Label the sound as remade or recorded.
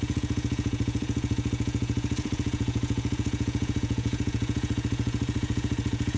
remade